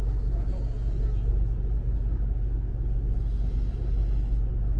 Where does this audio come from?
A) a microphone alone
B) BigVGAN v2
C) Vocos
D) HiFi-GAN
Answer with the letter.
A